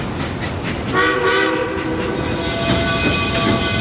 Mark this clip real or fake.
real